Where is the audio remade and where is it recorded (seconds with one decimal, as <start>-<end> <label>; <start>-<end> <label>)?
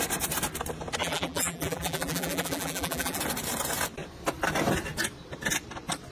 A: 0.0-1.0 recorded; 1.0-3.2 remade; 3.2-6.1 recorded